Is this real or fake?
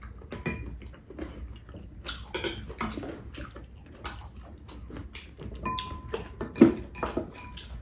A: real